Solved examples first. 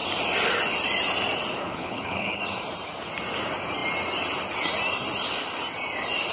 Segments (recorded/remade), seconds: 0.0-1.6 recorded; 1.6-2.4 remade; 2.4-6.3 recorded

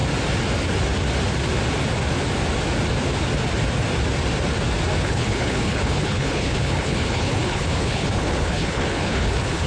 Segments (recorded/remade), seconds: 0.0-5.0 recorded; 5.0-9.7 remade

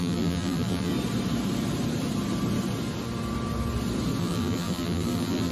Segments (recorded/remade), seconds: 0.0-0.9 remade; 0.9-4.2 recorded; 4.2-5.5 remade

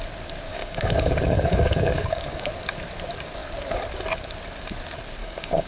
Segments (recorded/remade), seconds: 0.0-0.5 recorded; 0.5-2.5 remade; 2.5-5.2 recorded; 5.2-5.7 remade

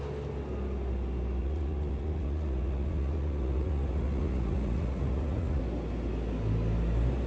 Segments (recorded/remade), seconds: 0.0-1.4 recorded; 1.4-5.6 remade; 5.6-7.3 recorded